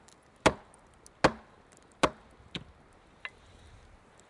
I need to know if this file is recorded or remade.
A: recorded